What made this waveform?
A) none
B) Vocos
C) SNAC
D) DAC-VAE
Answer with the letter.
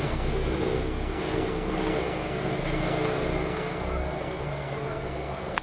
C